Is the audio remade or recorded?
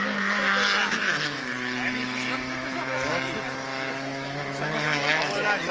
remade